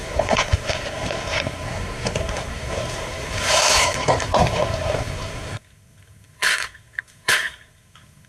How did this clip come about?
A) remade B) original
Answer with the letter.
A